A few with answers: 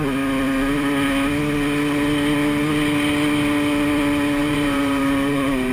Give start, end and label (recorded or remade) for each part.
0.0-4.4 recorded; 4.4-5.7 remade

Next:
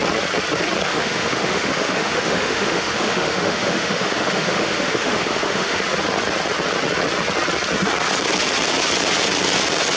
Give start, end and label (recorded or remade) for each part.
0.0-0.9 recorded; 0.9-5.8 remade; 5.8-10.0 recorded

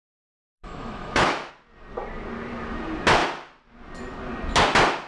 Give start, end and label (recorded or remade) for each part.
0.0-0.5 recorded; 0.5-1.5 remade; 1.5-5.1 recorded

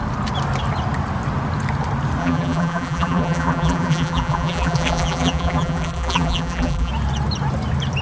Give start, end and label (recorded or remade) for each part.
0.0-2.2 recorded; 2.2-6.9 remade; 6.9-8.0 recorded